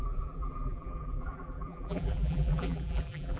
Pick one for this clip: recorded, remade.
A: remade